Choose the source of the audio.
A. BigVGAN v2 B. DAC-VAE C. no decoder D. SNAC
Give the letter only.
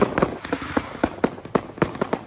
C